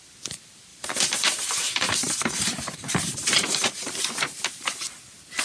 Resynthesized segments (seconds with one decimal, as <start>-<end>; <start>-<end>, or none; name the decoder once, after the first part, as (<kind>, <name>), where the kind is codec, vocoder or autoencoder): 0.7-3.9 (vocoder, BigVGAN v2)